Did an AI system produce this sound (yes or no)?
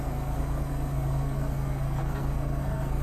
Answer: yes